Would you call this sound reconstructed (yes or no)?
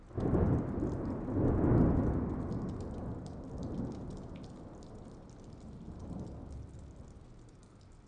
no